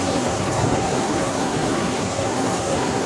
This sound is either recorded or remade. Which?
remade